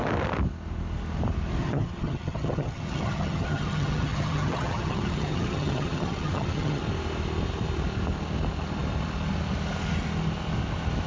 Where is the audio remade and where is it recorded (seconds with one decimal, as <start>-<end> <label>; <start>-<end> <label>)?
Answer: 0.0-1.6 recorded; 1.6-6.8 remade; 6.8-11.1 recorded